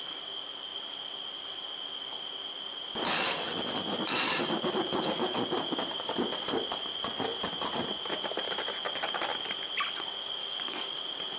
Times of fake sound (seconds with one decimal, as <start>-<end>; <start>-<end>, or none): 10.4-11.0